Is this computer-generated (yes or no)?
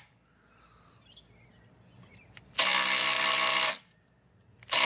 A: no